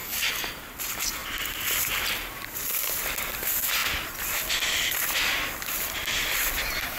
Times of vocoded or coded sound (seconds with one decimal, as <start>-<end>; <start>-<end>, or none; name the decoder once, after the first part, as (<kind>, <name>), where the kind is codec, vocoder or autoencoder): 0.0-0.5 (codec, DAC)